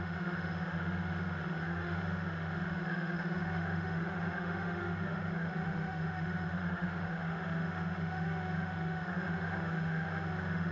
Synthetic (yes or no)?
yes